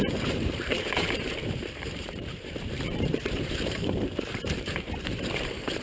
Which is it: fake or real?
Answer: fake